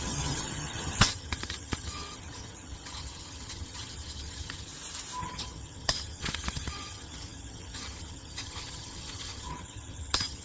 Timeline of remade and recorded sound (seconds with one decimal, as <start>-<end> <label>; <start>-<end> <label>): 0.0-4.7 remade; 4.7-5.2 recorded; 5.2-10.4 remade

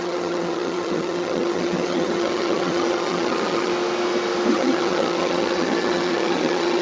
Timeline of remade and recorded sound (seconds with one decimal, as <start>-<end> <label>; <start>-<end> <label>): 0.0-3.7 remade; 3.7-4.5 recorded; 4.5-6.8 remade